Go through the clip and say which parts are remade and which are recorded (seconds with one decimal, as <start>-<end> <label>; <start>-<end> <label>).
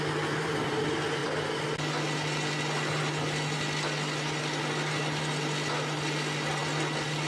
0.0-7.3 recorded